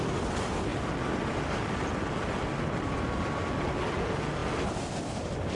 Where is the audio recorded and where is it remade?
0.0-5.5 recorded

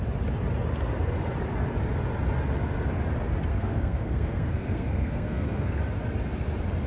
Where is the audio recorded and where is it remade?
0.0-3.5 recorded; 3.5-5.8 remade; 5.8-6.9 recorded

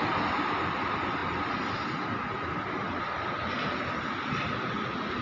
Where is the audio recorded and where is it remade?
0.0-5.2 recorded

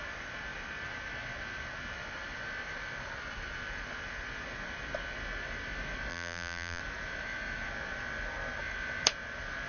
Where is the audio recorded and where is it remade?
0.0-6.1 recorded; 6.1-6.8 remade; 6.8-9.7 recorded

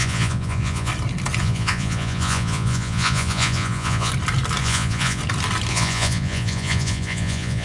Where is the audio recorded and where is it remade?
0.0-0.9 remade; 0.9-1.4 recorded; 1.4-4.1 remade; 4.1-4.6 recorded; 4.6-5.2 remade; 5.2-5.7 recorded; 5.7-7.6 remade

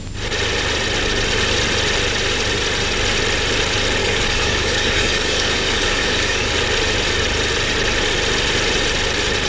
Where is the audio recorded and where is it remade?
0.0-4.0 recorded; 4.0-6.5 remade; 6.5-9.5 recorded

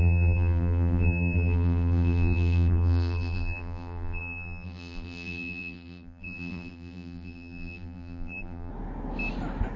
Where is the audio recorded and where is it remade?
0.0-8.7 remade; 8.7-9.8 recorded